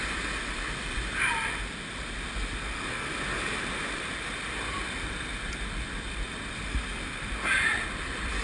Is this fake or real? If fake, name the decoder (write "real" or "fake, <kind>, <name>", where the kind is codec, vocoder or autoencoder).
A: real